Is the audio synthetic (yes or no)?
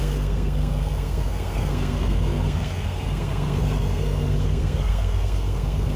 yes